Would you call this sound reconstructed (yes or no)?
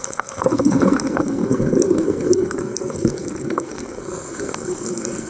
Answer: yes